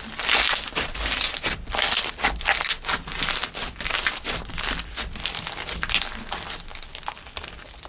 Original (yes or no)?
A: yes